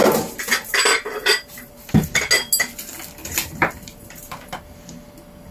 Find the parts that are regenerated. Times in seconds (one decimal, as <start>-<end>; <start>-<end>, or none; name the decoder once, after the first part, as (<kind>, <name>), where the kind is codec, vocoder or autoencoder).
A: 0.0-1.9 (vocoder, BigVGAN v2); 3.2-5.0